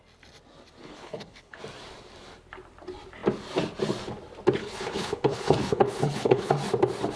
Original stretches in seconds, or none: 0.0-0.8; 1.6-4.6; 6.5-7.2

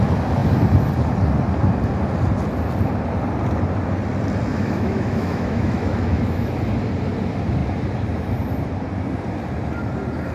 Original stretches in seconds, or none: 0.0-4.5; 6.5-10.3

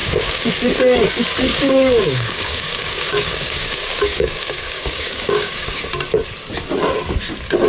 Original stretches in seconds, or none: 0.5-1.5; 5.8-7.7

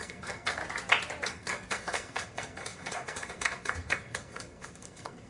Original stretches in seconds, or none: 0.6-1.3

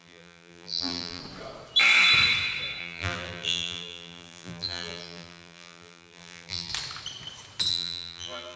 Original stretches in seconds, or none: 1.2-2.8; 6.7-7.7